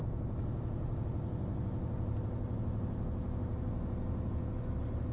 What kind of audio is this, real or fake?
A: real